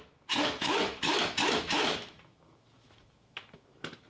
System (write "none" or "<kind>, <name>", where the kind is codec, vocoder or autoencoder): autoencoder, DAC-VAE